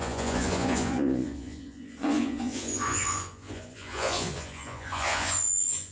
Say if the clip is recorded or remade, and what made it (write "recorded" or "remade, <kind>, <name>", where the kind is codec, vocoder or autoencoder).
remade, vocoder, Vocos